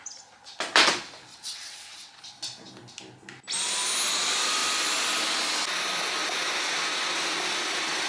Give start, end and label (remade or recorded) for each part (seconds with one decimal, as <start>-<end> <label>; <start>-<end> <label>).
0.0-1.3 recorded; 1.3-2.2 remade; 2.2-8.1 recorded